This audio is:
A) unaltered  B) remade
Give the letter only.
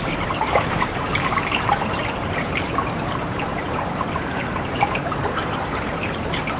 B